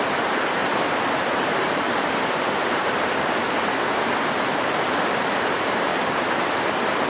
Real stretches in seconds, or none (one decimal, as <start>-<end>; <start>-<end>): 0.6-1.4; 5.9-6.6